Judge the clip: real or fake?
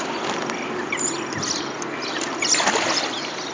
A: real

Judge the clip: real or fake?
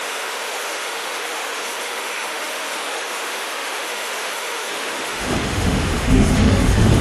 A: fake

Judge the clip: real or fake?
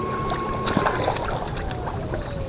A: fake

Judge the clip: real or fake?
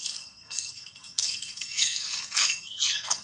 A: fake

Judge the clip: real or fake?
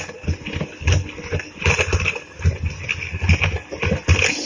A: real